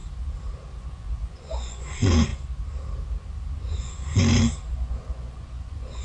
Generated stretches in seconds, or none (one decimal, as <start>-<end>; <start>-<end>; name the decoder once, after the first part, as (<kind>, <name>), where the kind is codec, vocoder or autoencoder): 0.8-2.3 (vocoder, Vocos); 3.6-4.2; 4.7-6.0